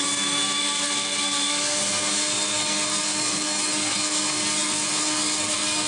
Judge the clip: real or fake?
fake